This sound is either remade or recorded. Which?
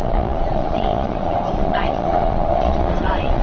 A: remade